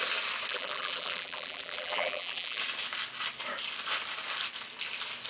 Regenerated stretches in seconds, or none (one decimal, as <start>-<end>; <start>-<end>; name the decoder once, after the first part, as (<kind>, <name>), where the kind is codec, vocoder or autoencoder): 0.5-2.6 (vocoder, BigVGAN v2)